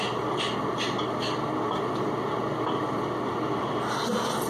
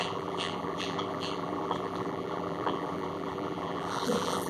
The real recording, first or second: first